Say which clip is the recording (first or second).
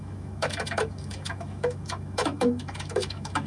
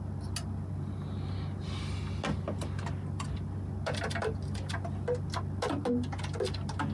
second